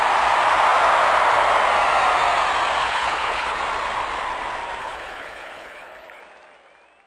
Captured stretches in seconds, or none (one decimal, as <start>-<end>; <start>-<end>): 0.0-2.8; 3.6-4.8; 6.2-7.1